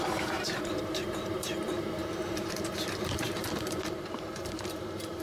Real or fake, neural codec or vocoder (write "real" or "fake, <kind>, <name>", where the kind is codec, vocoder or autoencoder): fake, vocoder, BigVGAN v2